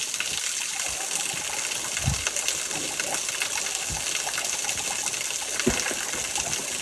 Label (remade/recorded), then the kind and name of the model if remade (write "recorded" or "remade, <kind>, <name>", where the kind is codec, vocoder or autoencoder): recorded